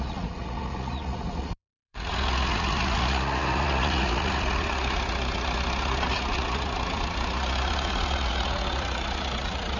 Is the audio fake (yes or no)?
yes